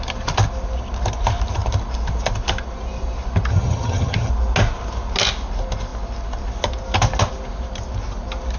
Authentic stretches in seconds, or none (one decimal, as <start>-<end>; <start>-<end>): 0.0-3.5; 4.3-8.6